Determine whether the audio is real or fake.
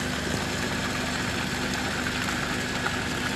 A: real